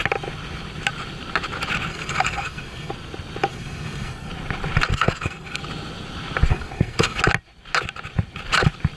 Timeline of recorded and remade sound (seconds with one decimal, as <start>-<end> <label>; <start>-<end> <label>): 0.0-1.9 recorded; 1.9-2.9 remade; 2.9-3.5 recorded; 3.5-4.3 remade; 4.3-4.9 recorded; 4.9-5.6 remade; 5.6-6.5 recorded; 6.5-7.2 remade; 7.2-9.0 recorded